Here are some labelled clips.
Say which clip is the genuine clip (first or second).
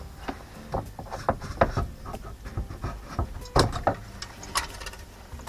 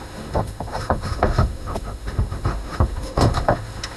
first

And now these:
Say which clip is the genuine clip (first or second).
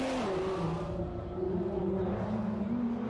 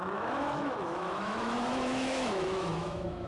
first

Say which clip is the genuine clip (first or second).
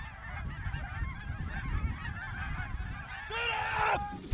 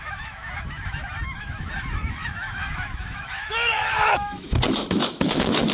first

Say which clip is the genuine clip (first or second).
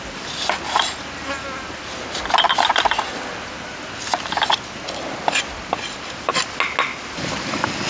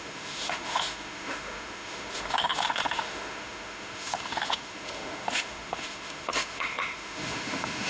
first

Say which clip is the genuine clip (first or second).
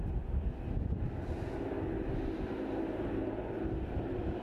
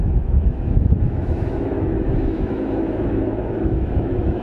first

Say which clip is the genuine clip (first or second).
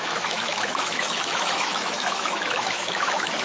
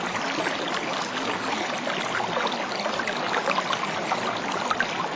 second